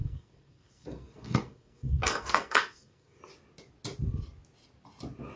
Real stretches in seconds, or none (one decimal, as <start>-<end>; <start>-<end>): 3.2-5.4